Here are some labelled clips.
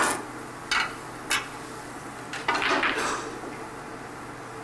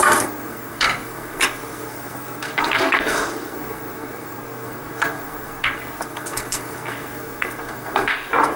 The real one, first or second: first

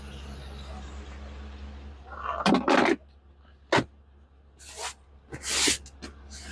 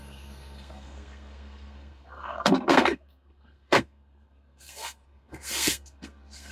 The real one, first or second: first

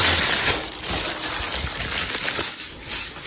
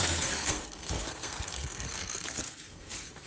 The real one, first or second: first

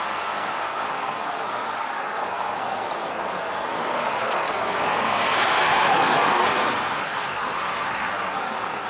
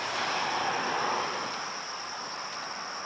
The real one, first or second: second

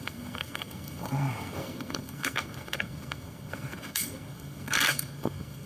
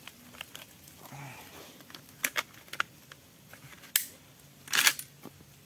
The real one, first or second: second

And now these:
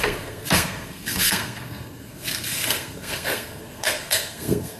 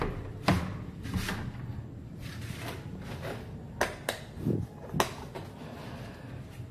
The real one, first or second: second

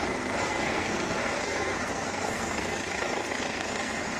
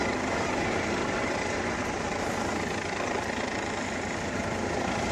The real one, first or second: second